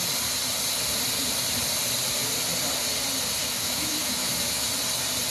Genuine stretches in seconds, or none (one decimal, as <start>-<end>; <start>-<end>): 0.0-3.4; 4.7-5.3